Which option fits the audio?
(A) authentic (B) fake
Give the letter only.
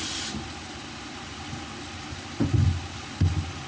A